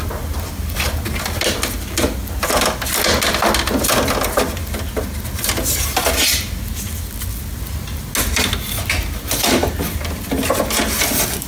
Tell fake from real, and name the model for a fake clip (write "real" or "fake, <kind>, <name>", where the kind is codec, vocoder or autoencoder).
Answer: real